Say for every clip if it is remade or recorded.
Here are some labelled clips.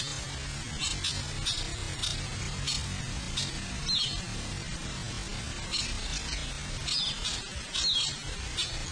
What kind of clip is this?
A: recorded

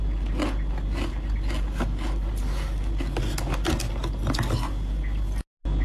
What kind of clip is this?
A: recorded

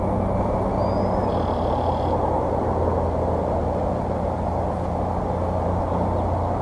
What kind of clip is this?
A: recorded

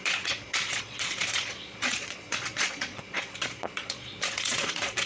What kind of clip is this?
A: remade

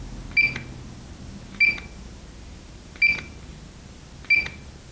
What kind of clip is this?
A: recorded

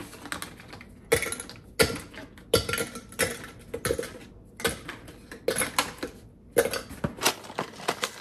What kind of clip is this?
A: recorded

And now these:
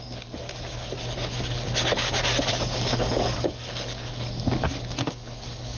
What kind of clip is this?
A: remade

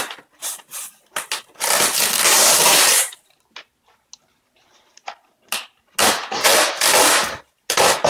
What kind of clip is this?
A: recorded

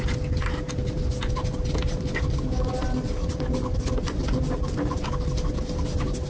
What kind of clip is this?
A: recorded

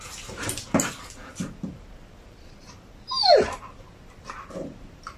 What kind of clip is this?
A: recorded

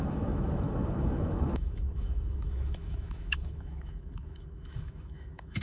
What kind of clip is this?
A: remade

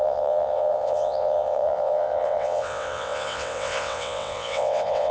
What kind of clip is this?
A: remade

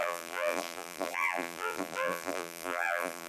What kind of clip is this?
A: remade